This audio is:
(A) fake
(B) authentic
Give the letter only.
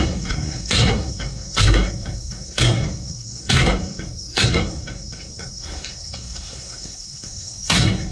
A